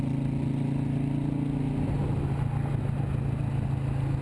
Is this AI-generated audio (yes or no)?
no